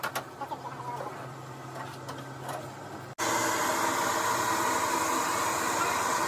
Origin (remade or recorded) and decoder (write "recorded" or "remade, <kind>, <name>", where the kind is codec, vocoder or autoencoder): recorded